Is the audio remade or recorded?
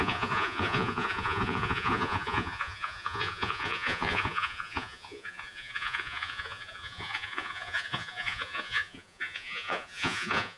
remade